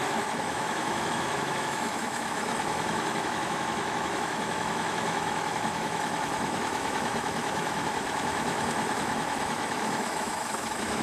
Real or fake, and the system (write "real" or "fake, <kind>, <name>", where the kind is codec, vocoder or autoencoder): fake, autoencoder, DAC-VAE